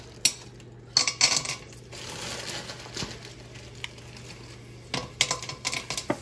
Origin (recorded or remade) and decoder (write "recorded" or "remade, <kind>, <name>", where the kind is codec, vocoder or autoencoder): recorded